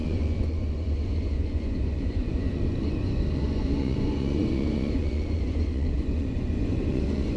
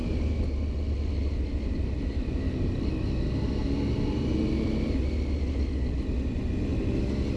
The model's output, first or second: first